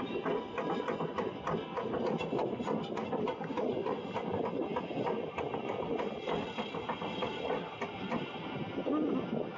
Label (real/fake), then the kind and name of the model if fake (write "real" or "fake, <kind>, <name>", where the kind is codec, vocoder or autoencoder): real